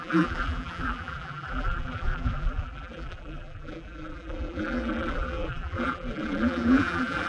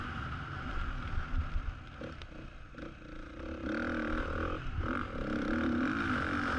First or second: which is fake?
first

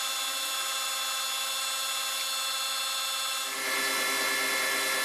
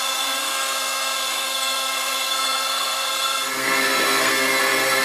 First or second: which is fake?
second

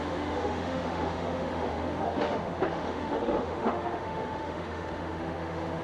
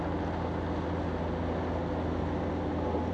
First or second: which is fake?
first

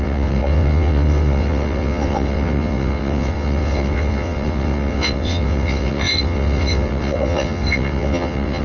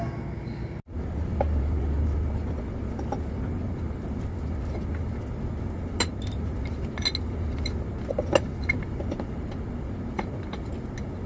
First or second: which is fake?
first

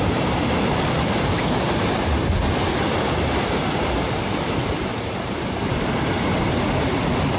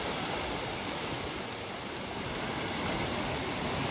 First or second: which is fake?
first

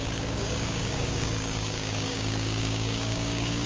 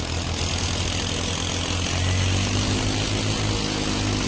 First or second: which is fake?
first